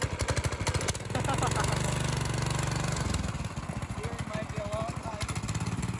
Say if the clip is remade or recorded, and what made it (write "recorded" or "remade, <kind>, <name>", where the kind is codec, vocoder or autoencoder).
recorded